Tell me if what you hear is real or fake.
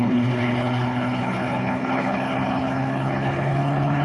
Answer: fake